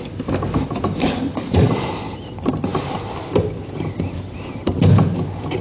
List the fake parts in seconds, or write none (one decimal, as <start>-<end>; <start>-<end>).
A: 0.9-1.7

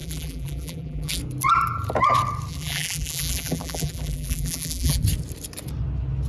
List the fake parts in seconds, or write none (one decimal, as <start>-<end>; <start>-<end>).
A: 0.0-1.2; 2.5-5.0

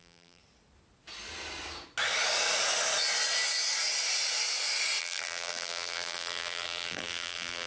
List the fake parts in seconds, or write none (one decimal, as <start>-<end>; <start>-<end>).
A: 0.0-0.4; 5.0-7.7

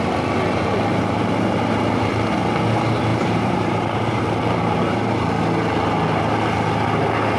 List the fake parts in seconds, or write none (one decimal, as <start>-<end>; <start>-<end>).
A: 3.1-5.1

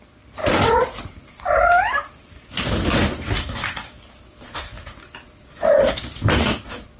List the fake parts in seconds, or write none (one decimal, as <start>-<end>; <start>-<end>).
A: 0.4-3.3

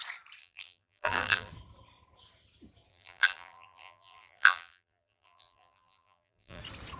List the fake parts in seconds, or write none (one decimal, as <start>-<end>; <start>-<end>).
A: 0.4-1.5; 2.9-6.6

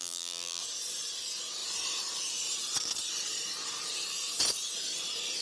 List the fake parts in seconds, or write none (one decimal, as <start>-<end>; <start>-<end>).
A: 0.0-0.6

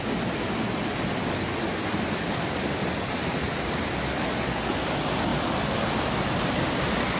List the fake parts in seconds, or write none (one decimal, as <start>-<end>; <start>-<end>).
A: 5.3-5.8